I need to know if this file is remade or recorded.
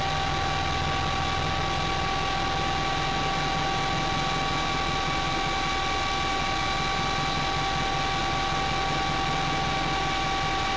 recorded